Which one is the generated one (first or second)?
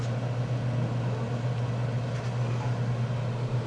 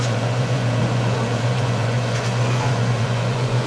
second